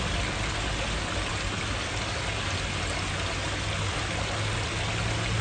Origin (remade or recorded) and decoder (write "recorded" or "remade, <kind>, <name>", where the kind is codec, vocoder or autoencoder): recorded